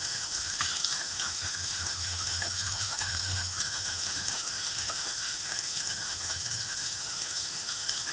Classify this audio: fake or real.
fake